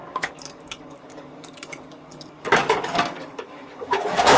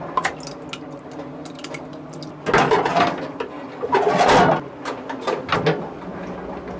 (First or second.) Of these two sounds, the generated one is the first